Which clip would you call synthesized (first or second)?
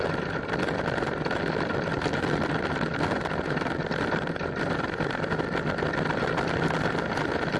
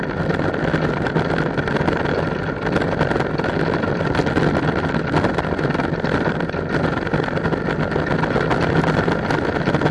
first